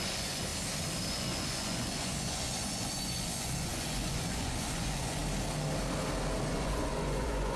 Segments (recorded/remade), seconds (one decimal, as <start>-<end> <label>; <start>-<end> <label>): 0.0-0.5 remade; 0.5-1.1 recorded; 1.1-5.2 remade; 5.2-6.5 recorded; 6.5-7.6 remade